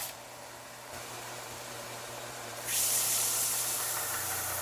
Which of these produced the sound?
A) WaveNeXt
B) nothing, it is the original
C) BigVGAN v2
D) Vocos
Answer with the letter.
C